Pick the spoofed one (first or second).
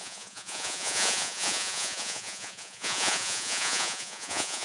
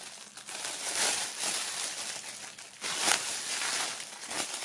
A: first